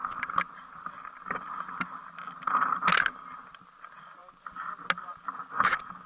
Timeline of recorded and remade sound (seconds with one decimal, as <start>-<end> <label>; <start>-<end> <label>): 0.0-6.1 recorded